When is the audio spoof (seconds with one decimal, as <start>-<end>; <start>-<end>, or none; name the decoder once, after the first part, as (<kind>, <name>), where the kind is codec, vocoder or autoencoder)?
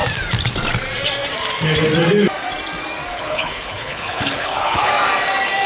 3.1-4.9 (codec, HILCodec)